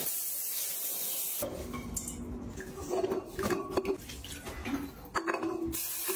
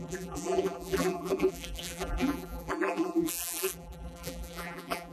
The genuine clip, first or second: first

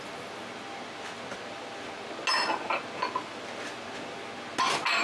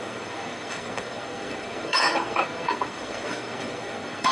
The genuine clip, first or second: first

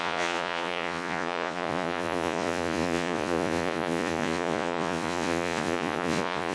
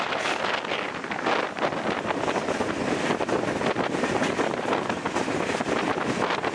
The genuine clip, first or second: second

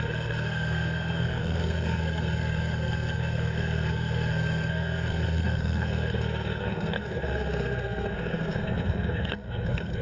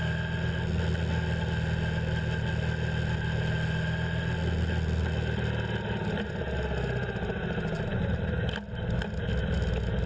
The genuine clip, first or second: second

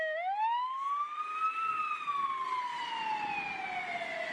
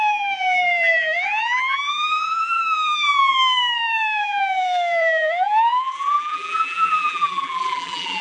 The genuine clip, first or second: first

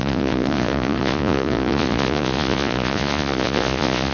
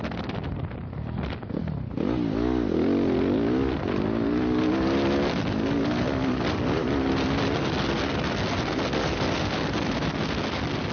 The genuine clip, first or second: second